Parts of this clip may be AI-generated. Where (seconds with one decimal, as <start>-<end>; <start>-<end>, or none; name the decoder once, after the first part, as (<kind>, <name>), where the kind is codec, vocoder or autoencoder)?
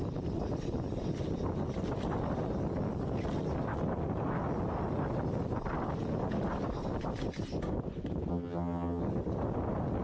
8.3-9.0 (vocoder, HiFi-GAN)